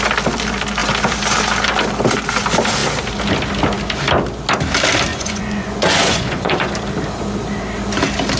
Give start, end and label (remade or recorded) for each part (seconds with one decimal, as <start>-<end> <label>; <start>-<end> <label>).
0.0-5.1 recorded; 5.1-6.7 remade; 6.7-8.4 recorded

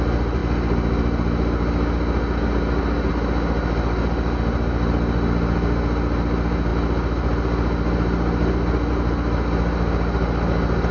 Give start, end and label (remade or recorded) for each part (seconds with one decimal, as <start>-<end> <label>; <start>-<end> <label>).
0.0-10.9 recorded

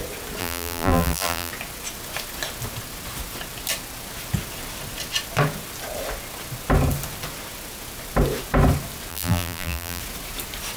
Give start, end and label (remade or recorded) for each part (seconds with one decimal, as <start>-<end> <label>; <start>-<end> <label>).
0.0-0.4 recorded; 0.4-1.5 remade; 1.5-9.1 recorded; 9.1-10.0 remade; 10.0-10.8 recorded

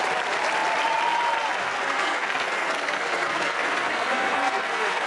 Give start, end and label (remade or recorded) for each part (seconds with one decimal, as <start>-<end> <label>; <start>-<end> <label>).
0.0-1.6 recorded; 1.6-5.1 remade